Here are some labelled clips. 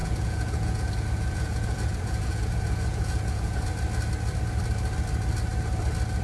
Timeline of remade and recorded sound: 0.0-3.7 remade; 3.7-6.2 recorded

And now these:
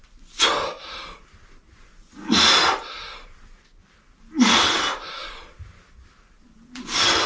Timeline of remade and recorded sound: 0.0-7.3 recorded

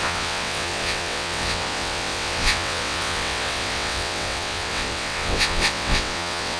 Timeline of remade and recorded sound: 0.0-6.6 remade

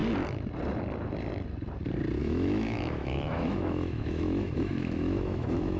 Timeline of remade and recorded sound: 0.0-2.2 recorded; 2.2-5.8 remade

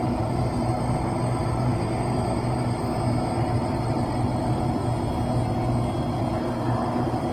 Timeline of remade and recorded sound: 0.0-2.9 remade; 2.9-3.4 recorded; 3.4-4.8 remade; 4.8-6.2 recorded; 6.2-7.3 remade